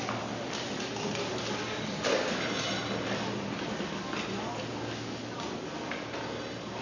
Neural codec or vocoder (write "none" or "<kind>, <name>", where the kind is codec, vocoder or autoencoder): none